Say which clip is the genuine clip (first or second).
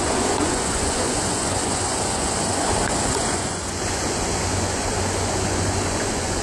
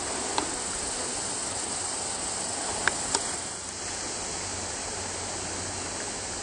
second